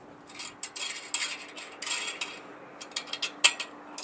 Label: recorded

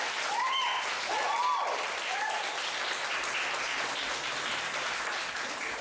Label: remade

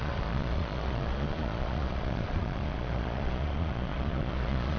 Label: remade